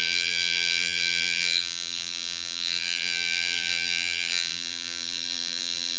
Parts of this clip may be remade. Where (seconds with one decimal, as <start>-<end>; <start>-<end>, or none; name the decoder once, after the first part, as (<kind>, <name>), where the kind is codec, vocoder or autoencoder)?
0.0-6.0 (vocoder, BigVGAN v2)